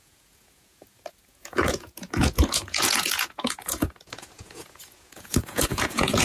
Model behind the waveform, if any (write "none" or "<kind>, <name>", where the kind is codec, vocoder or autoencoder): vocoder, Vocos